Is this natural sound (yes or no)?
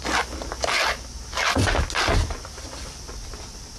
yes